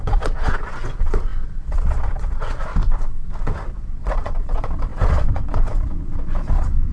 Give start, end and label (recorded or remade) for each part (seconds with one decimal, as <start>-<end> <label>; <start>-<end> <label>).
0.0-2.7 remade; 2.7-3.4 recorded; 3.4-6.9 remade